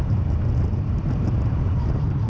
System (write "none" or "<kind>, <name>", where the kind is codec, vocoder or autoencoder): vocoder, BigVGAN v2